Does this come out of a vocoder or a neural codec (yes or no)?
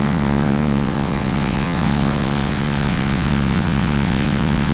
yes